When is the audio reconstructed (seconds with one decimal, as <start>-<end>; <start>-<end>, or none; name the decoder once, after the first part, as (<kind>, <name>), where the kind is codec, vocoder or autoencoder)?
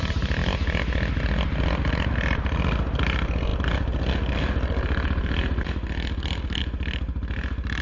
none